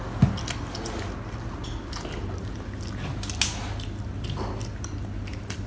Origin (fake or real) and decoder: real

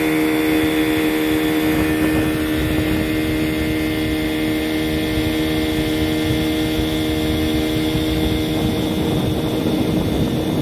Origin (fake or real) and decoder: real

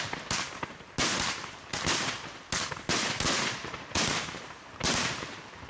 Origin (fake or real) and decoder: real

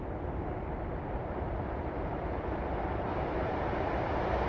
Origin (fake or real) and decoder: real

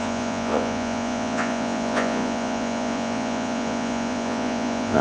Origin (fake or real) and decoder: fake, vocoder, Vocos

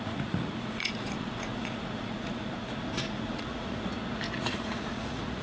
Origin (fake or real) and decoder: fake, vocoder, Vocos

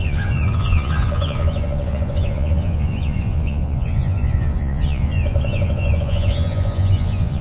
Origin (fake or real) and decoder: fake, vocoder, Vocos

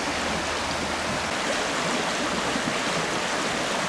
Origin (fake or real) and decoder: real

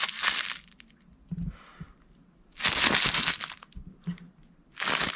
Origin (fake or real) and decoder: real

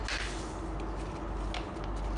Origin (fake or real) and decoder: real